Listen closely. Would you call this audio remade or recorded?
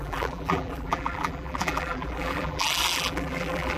remade